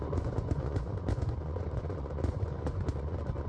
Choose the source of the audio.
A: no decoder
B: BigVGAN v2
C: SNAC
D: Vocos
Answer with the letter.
D